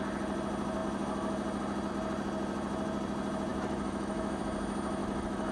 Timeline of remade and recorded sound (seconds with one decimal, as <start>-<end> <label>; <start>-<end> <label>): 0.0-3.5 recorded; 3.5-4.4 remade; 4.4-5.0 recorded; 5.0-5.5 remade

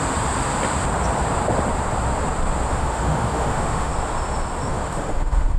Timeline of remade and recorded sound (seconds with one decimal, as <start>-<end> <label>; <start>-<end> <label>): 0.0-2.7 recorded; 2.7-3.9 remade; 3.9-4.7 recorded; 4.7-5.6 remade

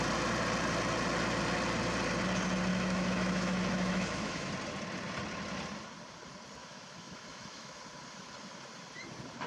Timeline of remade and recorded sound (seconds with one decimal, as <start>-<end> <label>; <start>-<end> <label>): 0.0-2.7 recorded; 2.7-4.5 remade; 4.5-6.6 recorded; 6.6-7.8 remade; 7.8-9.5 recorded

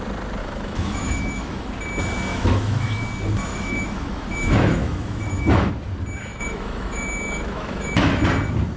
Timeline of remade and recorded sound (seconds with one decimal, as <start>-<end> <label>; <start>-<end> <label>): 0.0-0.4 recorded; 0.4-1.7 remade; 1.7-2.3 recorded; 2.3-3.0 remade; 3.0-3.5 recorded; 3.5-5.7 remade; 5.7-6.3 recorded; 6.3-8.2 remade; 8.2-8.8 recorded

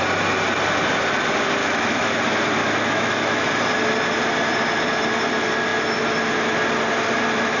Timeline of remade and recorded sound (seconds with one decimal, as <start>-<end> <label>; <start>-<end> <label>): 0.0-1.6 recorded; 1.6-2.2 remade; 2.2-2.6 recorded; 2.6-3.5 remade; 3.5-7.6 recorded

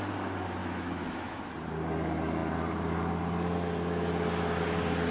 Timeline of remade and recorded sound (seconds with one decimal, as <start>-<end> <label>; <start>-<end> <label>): 0.0-0.6 recorded; 0.6-1.4 remade; 1.4-5.1 recorded